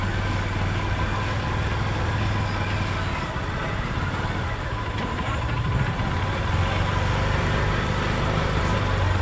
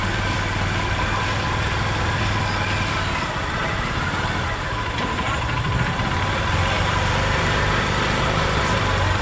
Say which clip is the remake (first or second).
second